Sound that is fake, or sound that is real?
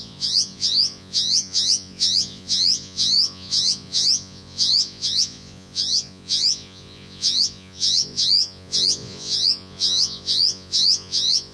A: fake